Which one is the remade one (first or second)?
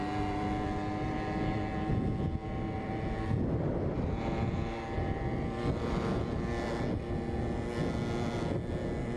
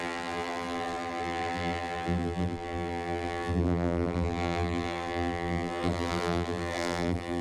second